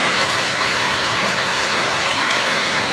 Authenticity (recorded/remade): remade